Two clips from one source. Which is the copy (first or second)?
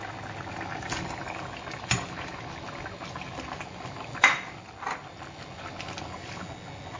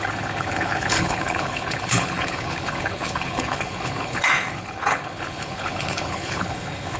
second